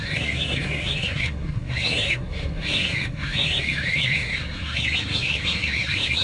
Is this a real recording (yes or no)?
no